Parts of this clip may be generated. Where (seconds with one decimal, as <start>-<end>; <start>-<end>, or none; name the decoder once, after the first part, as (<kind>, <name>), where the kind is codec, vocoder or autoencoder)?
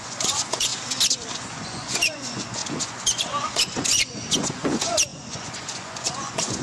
0.0-0.7 (vocoder, Vocos); 1.3-6.6